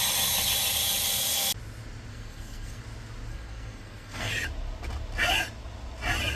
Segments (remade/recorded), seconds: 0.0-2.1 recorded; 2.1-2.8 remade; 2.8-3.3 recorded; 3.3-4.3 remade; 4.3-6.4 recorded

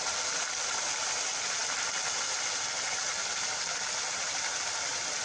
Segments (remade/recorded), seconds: 0.0-5.2 recorded

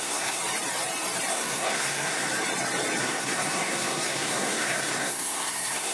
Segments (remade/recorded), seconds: 0.0-0.4 remade; 0.4-1.3 recorded; 1.3-2.3 remade; 2.3-3.0 recorded; 3.0-5.9 remade

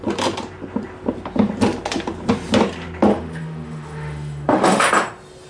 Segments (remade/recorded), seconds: 0.0-3.1 recorded; 3.1-4.9 remade; 4.9-5.5 recorded